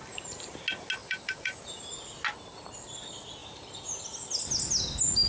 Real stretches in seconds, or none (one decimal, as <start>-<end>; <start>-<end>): 0.0-1.0; 1.8-3.4; 4.0-5.3